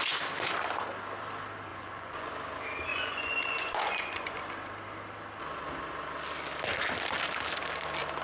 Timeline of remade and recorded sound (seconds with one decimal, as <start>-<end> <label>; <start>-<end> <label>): 0.0-1.7 recorded; 1.7-2.3 remade; 2.3-2.9 recorded; 2.9-4.4 remade; 4.4-8.2 recorded